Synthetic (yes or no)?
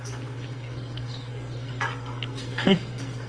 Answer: yes